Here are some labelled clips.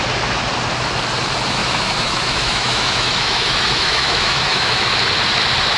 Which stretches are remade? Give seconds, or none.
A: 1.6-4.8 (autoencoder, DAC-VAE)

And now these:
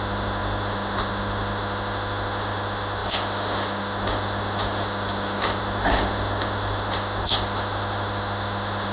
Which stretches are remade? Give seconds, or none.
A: 0.0-8.9 (autoencoder, DAC-VAE)

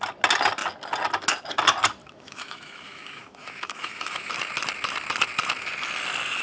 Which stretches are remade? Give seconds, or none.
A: 2.0-4.3 (autoencoder, DAC-VAE)

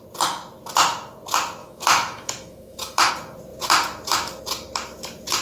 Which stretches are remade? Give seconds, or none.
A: 1.6-3.1 (autoencoder, DAC-VAE)

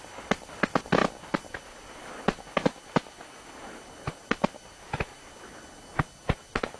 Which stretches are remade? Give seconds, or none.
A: none

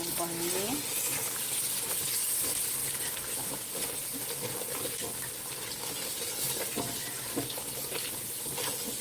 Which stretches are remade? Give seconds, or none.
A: none

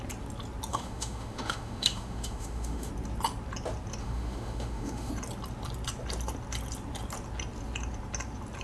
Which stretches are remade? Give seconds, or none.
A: 0.7-2.9 (autoencoder, DAC-VAE); 4.0-5.1